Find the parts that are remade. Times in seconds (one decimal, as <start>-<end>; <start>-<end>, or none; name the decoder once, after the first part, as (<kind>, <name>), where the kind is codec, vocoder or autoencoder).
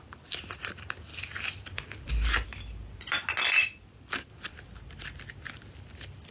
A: 1.1-2.1 (vocoder, BigVGAN v2)